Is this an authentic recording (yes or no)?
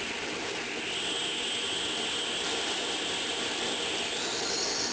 yes